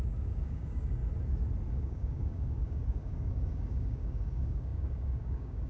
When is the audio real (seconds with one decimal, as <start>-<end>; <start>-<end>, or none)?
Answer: 1.0-1.7